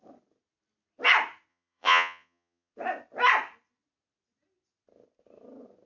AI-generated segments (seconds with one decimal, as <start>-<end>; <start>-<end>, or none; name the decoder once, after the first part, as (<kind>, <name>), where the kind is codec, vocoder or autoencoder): 1.5-2.7 (vocoder, Vocos)